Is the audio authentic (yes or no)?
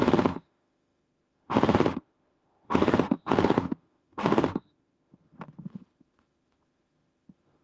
no